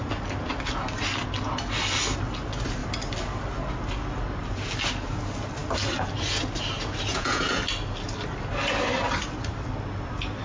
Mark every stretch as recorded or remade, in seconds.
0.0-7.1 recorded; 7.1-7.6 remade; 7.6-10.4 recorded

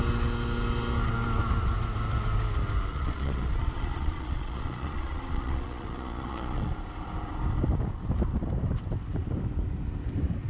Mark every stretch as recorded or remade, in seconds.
0.0-2.9 recorded; 2.9-6.7 remade; 6.7-10.5 recorded

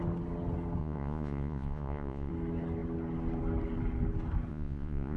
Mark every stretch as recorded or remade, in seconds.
0.0-0.8 recorded; 0.8-2.3 remade; 2.3-4.5 recorded; 4.5-5.2 remade

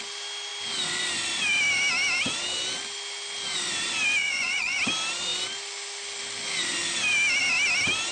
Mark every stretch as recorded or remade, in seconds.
0.0-4.2 recorded; 4.2-4.8 remade; 4.8-8.1 recorded